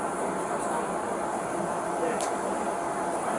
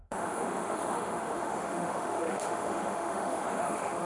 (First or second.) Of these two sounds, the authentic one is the first